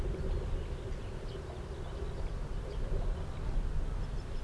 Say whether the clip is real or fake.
real